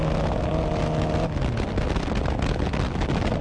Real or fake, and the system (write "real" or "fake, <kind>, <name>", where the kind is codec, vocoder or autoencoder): real